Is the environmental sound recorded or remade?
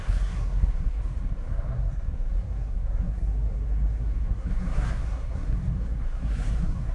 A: remade